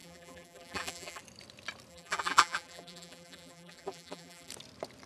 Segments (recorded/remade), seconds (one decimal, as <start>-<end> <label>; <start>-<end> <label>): 0.0-1.2 remade; 1.2-1.9 recorded; 1.9-4.5 remade; 4.5-5.1 recorded